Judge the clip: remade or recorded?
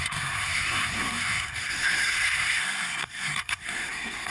remade